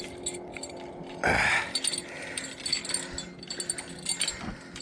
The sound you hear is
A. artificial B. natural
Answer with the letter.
B